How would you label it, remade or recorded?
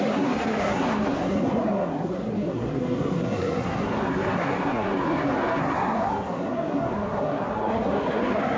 remade